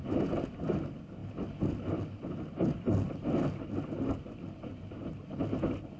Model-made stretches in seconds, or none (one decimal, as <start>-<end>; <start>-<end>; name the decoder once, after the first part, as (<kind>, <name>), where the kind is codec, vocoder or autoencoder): none

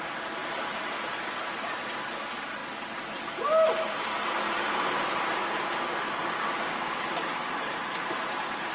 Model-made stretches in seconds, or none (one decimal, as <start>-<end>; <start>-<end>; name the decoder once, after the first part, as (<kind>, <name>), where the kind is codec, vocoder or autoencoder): 6.2-7.3 (codec, DAC)

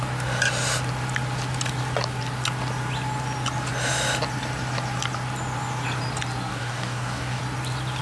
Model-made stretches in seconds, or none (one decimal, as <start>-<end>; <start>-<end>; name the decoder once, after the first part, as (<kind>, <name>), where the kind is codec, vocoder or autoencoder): 6.5-7.4 (codec, DAC)

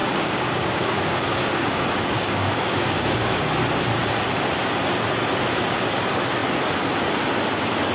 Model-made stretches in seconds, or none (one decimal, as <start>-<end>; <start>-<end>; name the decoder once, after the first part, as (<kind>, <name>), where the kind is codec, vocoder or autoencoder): 0.0-3.4 (codec, DAC)

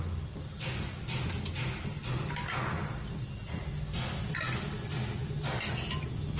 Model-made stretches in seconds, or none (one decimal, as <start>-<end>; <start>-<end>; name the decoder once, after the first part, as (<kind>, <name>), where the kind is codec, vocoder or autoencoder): none

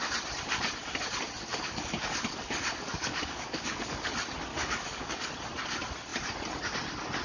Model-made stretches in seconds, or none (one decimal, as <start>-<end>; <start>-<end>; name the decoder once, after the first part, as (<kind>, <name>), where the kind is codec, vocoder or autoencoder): 1.5-4.1 (codec, DAC); 4.5-5.3

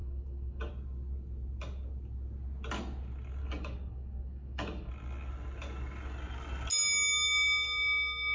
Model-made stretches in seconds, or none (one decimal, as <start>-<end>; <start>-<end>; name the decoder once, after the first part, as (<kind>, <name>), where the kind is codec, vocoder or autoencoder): 0.0-0.7 (codec, DAC); 3.4-4.9

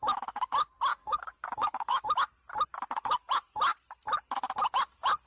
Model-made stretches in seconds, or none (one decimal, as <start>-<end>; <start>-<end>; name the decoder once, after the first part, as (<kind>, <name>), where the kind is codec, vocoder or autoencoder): 0.9-2.0 (codec, DAC)